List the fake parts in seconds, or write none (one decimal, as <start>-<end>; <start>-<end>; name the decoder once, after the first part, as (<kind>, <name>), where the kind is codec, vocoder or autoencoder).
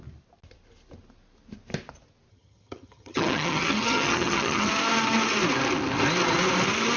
2.3-4.7 (vocoder, HiFi-GAN)